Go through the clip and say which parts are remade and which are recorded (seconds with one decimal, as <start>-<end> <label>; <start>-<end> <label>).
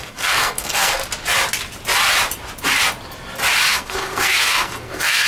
0.0-1.0 remade; 1.0-3.7 recorded; 3.7-5.3 remade